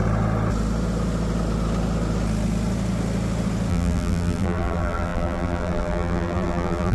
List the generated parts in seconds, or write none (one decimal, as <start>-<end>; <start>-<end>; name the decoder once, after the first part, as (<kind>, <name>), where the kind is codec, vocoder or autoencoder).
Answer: 3.7-6.9 (vocoder, BigVGAN v2)